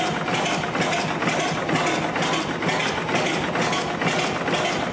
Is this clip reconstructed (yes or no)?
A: no